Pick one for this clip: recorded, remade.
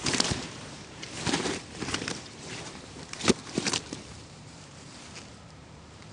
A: remade